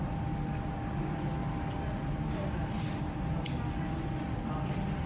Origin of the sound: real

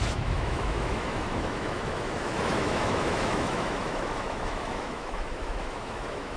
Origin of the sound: fake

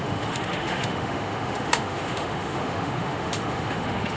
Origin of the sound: fake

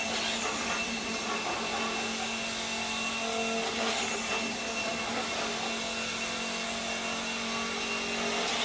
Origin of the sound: real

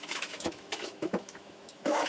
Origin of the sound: fake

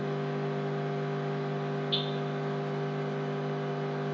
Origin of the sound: real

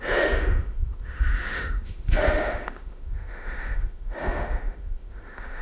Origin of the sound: fake